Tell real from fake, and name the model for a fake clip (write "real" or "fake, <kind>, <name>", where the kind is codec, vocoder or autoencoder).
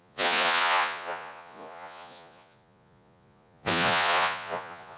fake, vocoder, Vocos